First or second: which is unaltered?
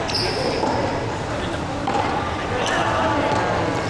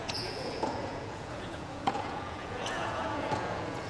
first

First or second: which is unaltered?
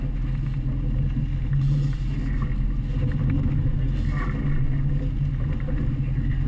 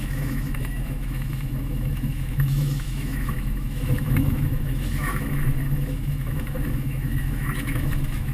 first